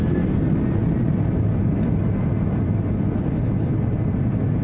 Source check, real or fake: real